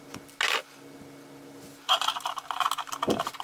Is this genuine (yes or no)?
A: yes